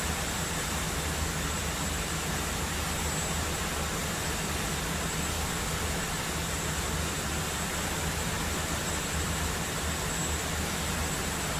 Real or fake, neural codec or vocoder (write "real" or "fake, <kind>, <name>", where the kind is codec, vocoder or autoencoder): real